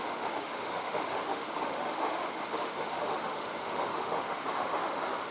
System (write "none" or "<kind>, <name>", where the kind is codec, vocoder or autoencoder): autoencoder, DAC-VAE